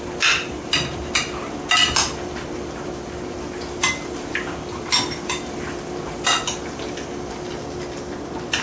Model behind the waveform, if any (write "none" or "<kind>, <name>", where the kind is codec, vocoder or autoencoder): none